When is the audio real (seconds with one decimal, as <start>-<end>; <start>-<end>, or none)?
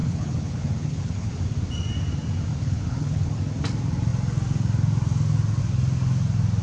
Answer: 1.3-2.5; 3.4-6.6